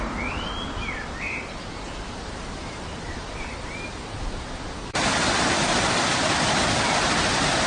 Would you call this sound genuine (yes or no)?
yes